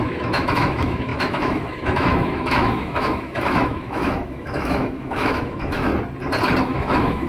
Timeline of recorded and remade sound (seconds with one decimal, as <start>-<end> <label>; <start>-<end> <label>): 0.0-5.9 remade; 5.9-6.6 recorded; 6.6-7.3 remade